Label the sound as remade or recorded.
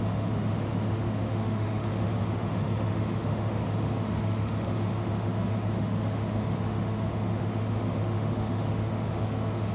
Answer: remade